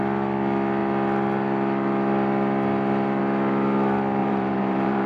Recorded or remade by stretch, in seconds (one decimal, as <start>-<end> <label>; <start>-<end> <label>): 0.0-4.2 recorded; 4.2-5.1 remade

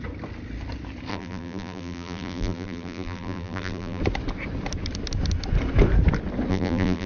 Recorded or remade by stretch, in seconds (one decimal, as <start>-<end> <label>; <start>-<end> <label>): 0.0-1.1 recorded; 1.1-4.0 remade; 4.0-6.5 recorded; 6.5-7.1 remade

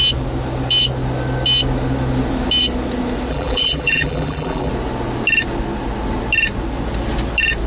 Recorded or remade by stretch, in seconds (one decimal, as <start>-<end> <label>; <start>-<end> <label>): 0.0-3.3 recorded; 3.3-4.7 remade; 4.7-7.7 recorded

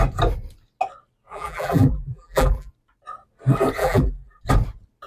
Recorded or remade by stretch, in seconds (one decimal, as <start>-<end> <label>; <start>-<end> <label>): 0.0-1.3 recorded; 1.3-2.7 remade; 2.7-3.8 recorded; 3.8-4.4 remade; 4.4-5.1 recorded

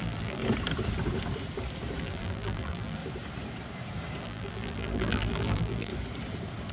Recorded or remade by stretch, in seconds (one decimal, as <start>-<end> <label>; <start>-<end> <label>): 0.0-0.4 remade; 0.4-2.0 recorded; 2.0-3.0 remade; 3.0-4.2 recorded; 4.2-5.9 remade; 5.9-6.7 recorded